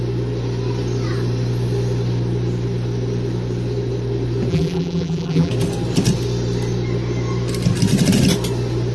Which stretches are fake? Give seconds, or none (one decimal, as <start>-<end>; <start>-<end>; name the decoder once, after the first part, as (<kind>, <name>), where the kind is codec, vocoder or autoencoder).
4.5-5.5 (vocoder, BigVGAN v2)